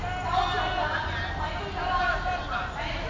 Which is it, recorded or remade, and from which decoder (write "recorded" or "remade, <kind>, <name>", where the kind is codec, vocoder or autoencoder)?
recorded